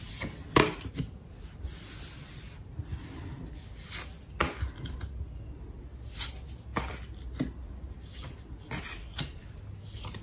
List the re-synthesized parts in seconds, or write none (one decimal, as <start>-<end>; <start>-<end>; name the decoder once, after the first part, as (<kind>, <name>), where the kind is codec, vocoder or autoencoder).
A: none